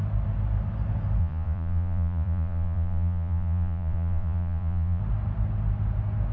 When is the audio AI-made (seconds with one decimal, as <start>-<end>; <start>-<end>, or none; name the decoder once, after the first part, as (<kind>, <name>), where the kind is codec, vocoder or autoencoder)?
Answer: 1.2-5.0 (vocoder, Vocos)